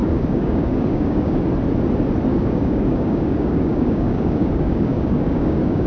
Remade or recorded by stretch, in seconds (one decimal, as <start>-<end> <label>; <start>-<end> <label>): 0.0-1.4 remade; 1.4-2.3 recorded; 2.3-5.9 remade

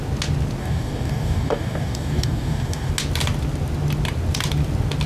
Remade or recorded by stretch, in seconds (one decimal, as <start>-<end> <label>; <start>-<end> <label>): 0.0-0.6 recorded; 0.6-2.9 remade; 2.9-5.1 recorded

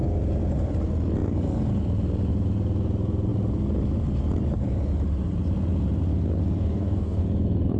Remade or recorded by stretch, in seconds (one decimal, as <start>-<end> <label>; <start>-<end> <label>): 0.0-6.6 recorded; 6.6-7.2 remade; 7.2-7.8 recorded

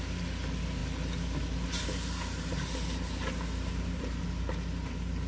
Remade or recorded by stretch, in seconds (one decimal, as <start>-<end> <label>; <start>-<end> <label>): 0.0-5.3 recorded

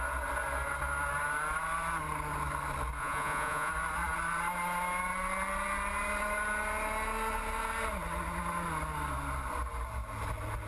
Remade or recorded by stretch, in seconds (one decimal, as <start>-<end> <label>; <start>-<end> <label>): 0.0-3.0 recorded; 3.0-3.7 remade; 3.7-10.7 recorded

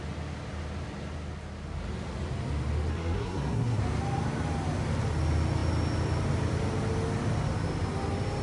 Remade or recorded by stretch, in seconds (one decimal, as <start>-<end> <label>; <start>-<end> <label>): 0.0-2.9 recorded; 2.9-3.8 remade; 3.8-8.4 recorded